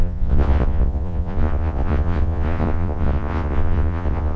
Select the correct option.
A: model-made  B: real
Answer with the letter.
A